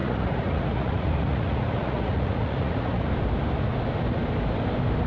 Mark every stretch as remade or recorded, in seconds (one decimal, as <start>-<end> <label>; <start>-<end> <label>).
0.0-3.1 remade; 3.1-5.1 recorded